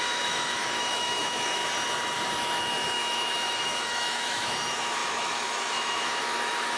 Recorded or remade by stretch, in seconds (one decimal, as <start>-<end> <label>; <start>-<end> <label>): 0.0-1.6 remade; 1.6-2.3 recorded; 2.3-6.8 remade